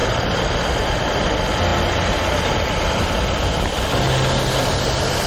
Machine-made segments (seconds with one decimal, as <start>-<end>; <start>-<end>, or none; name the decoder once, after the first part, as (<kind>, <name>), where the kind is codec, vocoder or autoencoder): none